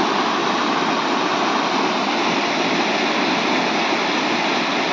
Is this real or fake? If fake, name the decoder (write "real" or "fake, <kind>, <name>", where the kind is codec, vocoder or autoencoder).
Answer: real